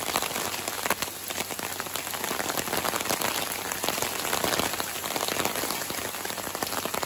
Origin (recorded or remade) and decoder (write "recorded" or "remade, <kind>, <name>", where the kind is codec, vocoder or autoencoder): recorded